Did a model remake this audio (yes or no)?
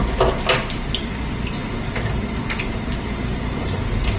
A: no